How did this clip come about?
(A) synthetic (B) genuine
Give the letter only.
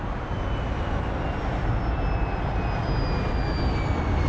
B